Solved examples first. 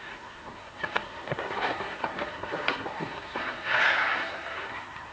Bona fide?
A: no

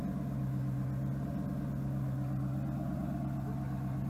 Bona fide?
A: yes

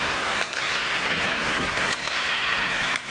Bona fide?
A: no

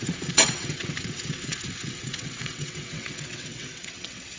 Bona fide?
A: no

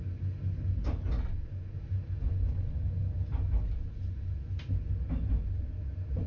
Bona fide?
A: yes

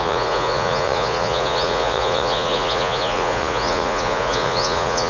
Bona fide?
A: no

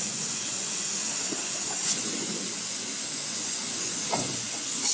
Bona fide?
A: no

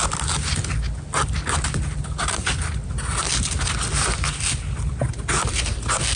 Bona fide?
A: yes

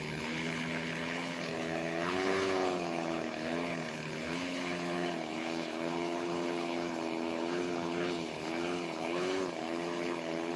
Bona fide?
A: no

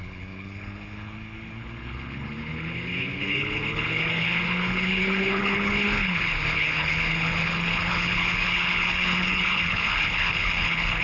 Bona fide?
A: no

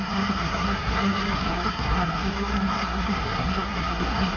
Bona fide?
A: no